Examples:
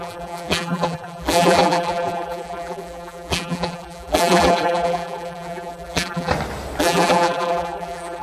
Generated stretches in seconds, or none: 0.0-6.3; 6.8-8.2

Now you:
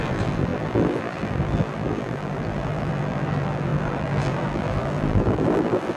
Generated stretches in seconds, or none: 0.0-6.0

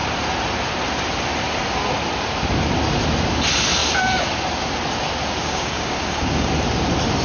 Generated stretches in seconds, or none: 5.4-6.5